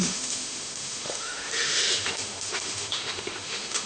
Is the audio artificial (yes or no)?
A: yes